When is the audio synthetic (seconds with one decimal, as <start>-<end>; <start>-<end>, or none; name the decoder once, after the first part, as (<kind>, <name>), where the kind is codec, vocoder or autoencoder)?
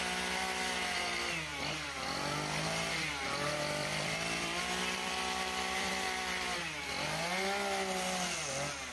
3.8-5.9 (vocoder, BigVGAN v2)